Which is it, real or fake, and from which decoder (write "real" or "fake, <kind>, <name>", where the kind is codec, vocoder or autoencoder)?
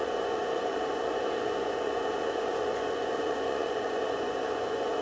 fake, vocoder, Vocos